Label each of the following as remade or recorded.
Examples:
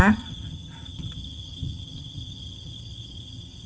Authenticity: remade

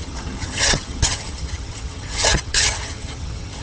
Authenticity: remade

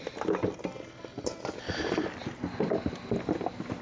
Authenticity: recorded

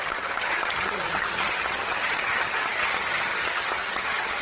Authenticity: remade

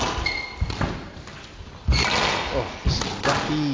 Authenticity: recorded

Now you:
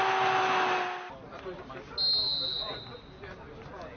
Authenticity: recorded